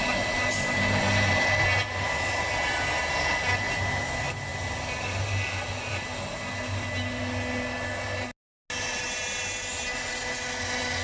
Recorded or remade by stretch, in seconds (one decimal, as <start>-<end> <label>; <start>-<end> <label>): 0.0-11.0 recorded